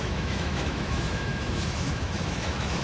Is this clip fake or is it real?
fake